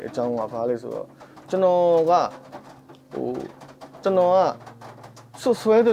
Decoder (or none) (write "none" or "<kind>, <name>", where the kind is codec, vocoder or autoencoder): none